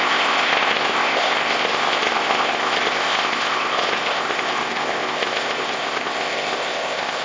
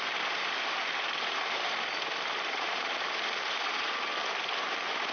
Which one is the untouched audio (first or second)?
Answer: second